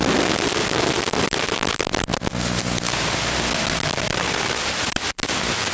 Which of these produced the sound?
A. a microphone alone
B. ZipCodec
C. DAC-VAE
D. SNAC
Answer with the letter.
A